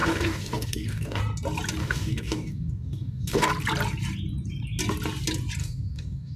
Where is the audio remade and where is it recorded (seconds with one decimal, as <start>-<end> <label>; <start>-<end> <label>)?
0.0-1.2 remade; 1.2-1.8 recorded; 1.8-3.5 remade; 3.5-5.6 recorded; 5.6-6.4 remade